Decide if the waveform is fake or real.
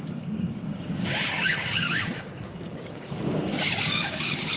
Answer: fake